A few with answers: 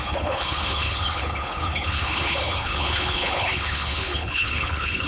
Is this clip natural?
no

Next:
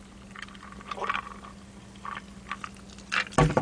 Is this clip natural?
yes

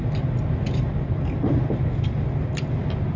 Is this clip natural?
yes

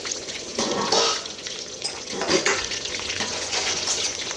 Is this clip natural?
no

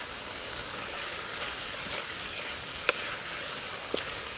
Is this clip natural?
no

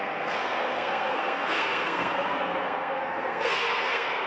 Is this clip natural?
no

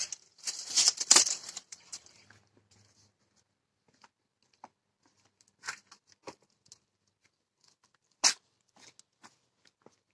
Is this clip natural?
yes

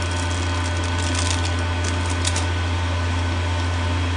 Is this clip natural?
yes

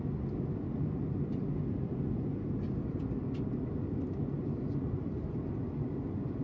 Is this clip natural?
no